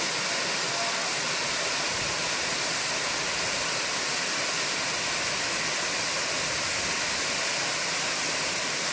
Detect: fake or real real